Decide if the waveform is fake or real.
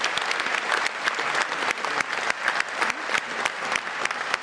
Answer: real